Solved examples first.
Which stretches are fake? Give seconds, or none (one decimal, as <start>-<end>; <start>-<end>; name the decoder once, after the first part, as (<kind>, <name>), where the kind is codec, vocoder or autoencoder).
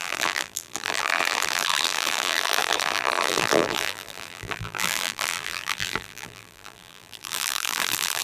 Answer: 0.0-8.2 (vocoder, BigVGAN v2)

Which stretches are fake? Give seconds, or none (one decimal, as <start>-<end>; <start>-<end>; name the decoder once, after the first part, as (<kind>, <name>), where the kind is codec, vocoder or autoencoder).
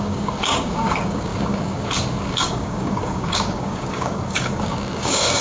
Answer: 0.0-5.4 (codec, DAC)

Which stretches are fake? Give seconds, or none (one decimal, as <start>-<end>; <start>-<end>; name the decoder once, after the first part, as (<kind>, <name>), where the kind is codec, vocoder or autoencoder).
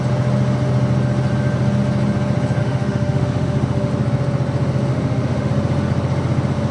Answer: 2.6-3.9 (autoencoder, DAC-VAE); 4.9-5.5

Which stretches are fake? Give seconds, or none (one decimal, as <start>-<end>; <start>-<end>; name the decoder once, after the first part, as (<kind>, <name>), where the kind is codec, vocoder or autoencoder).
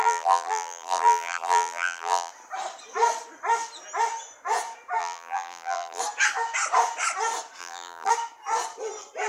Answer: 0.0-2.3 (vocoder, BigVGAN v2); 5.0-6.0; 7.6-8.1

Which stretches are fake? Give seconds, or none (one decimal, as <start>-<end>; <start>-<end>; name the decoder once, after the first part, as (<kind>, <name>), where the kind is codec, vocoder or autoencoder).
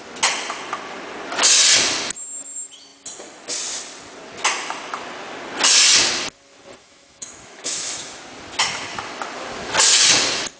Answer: 6.8-8.2 (autoencoder, DAC-VAE)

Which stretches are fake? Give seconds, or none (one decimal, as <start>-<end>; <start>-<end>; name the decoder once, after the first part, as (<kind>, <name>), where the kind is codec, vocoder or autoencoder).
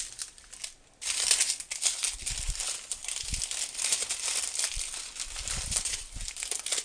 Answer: none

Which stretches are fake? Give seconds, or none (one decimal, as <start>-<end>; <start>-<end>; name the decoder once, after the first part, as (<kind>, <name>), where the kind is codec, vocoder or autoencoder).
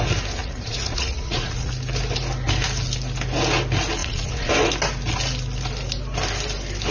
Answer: 0.4-1.7 (vocoder, Vocos); 4.0-4.5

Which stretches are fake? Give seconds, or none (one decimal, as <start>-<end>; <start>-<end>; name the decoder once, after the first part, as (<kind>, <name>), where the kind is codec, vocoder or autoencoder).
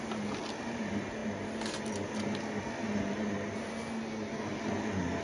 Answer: none